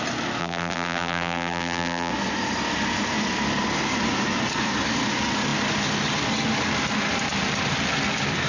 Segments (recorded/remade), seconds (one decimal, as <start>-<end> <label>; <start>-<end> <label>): 0.0-0.4 recorded; 0.4-2.1 remade; 2.1-8.5 recorded